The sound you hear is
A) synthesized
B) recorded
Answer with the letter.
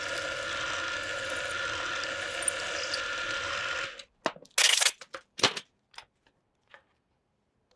B